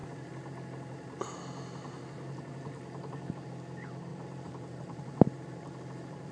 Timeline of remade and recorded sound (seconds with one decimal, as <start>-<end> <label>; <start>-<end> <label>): 0.0-4.1 recorded; 4.1-6.3 remade